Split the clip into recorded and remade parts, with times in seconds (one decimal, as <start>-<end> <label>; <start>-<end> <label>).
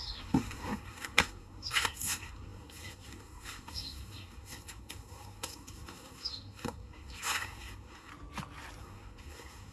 0.0-8.1 remade; 8.1-8.8 recorded; 8.8-9.7 remade